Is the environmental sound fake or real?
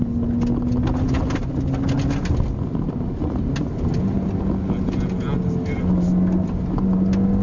real